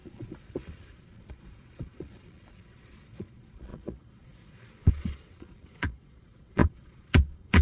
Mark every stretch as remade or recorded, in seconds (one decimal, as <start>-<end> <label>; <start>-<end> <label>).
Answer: 0.0-7.6 remade